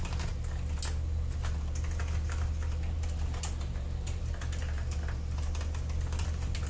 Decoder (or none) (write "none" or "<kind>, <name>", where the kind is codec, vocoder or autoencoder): none